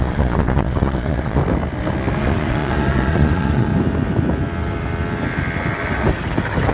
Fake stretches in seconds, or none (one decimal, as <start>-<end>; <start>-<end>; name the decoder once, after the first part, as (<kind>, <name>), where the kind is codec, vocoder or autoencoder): 0.0-1.4 (vocoder, Vocos); 2.2-3.7